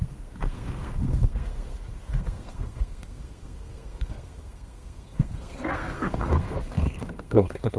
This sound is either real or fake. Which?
fake